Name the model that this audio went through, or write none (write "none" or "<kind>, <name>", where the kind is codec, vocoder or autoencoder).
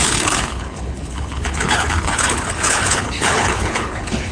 codec, HILCodec